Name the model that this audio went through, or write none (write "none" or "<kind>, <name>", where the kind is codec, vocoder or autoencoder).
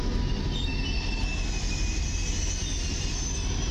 none